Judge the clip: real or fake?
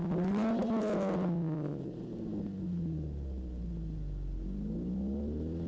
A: real